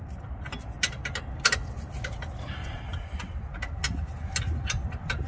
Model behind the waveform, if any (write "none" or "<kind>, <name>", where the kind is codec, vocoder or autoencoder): none